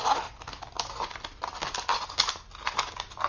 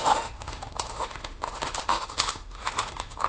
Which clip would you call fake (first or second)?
second